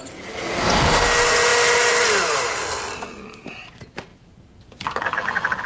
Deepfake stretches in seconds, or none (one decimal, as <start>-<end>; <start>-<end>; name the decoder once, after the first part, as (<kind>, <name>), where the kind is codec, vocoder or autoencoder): none